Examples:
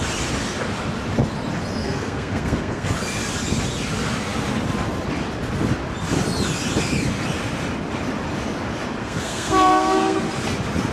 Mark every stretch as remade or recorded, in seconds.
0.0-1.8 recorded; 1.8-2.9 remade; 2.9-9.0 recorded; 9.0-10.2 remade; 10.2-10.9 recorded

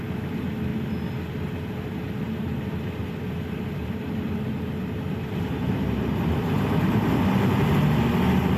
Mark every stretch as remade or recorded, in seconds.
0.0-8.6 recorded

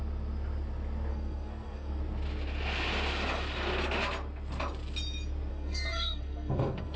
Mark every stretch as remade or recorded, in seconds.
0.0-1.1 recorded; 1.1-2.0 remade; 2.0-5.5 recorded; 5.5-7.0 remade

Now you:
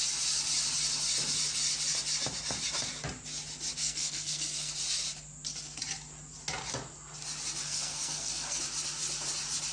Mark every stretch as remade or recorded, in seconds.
0.0-3.8 recorded; 3.8-4.7 remade; 4.7-7.6 recorded; 7.6-8.6 remade; 8.6-9.7 recorded

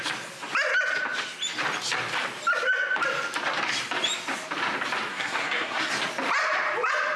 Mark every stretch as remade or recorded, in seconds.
0.0-5.1 recorded; 5.1-5.9 remade; 5.9-7.2 recorded

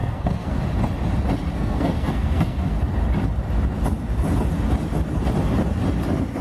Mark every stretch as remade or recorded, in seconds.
0.0-0.6 remade; 0.6-1.5 recorded; 1.5-2.8 remade; 2.8-6.4 recorded